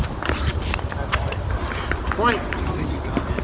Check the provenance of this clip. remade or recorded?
remade